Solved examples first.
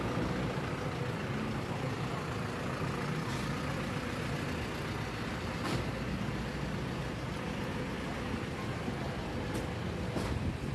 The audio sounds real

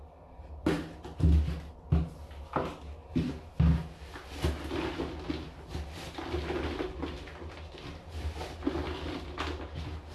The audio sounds real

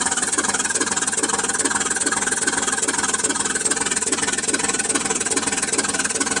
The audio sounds real